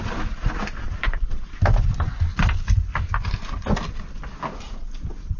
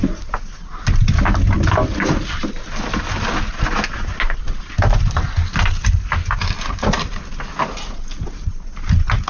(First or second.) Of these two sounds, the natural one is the second